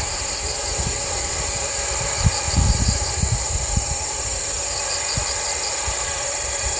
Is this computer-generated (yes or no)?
yes